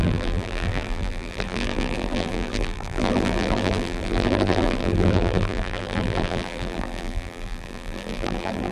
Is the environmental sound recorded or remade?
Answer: remade